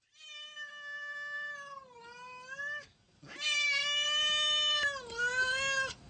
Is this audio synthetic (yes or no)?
no